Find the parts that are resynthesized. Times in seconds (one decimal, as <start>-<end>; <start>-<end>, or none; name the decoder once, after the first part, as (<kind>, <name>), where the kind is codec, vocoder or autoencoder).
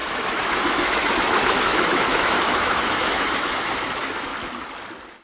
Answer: 0.0-4.3 (autoencoder, DAC-VAE)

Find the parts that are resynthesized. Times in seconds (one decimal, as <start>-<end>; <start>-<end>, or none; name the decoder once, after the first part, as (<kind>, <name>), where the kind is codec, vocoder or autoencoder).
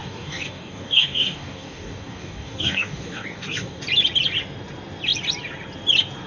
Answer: 0.0-3.8 (codec, DAC)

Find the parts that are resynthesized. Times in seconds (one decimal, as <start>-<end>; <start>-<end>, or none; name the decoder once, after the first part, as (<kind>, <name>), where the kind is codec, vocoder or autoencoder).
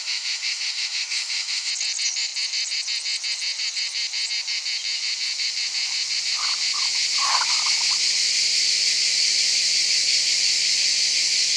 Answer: 0.0-1.7 (autoencoder, DAC-VAE)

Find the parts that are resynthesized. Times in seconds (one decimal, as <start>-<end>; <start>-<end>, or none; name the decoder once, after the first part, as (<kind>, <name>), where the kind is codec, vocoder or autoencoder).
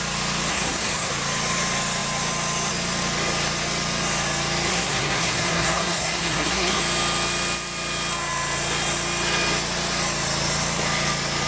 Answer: 0.5-1.1 (codec, SNAC); 4.7-6.8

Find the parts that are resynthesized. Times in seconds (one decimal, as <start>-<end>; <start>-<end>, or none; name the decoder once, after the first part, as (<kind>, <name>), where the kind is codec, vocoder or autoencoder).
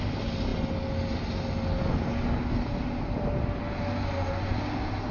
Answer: none